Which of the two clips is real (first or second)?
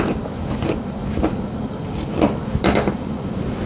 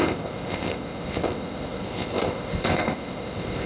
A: first